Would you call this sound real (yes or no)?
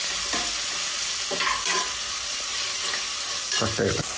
yes